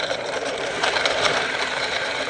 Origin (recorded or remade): remade